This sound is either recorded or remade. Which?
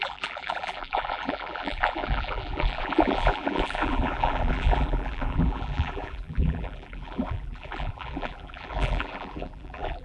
remade